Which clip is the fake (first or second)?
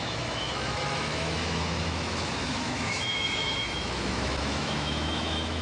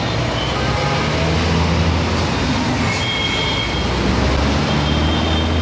first